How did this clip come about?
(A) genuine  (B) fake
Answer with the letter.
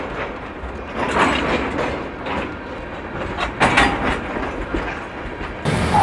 A